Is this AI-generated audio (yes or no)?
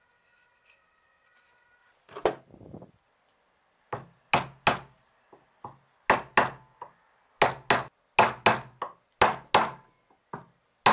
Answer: no